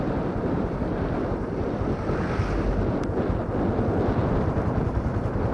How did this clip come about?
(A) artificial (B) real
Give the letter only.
B